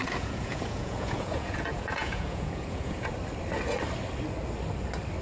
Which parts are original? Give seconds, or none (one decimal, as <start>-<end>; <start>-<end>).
3.1-5.2